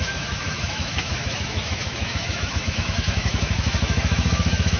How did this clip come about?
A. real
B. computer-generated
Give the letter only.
B